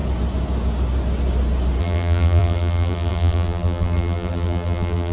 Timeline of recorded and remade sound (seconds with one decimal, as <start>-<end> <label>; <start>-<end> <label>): 0.0-1.8 recorded; 1.8-5.1 remade